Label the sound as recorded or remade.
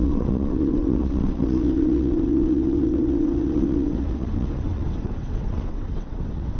remade